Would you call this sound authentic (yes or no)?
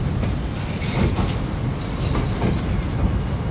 yes